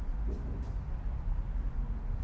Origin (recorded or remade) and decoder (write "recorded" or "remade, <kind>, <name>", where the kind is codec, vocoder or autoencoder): recorded